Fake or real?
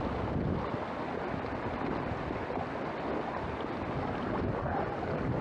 real